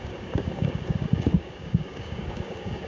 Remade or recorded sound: remade